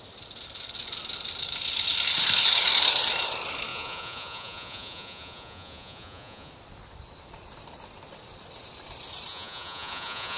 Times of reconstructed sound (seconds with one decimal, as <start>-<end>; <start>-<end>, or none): 3.7-6.5; 9.3-10.4